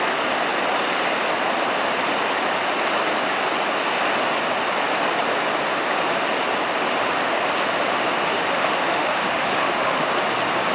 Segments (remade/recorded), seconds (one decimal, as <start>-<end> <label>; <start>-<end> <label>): 0.0-8.3 recorded; 8.3-10.1 remade; 10.1-10.7 recorded